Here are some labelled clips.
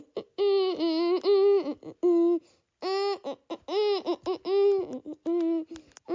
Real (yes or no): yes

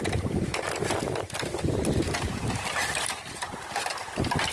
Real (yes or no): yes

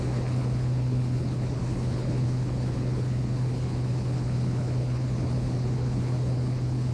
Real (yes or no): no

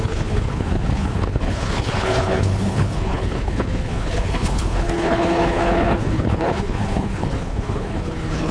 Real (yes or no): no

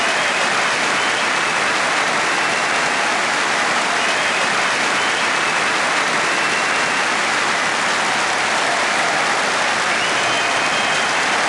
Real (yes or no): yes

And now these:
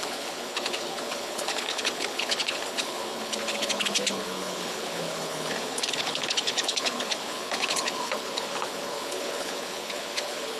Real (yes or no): no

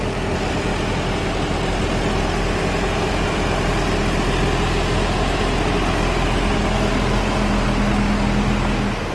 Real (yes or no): yes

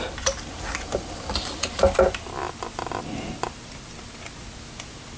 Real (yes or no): yes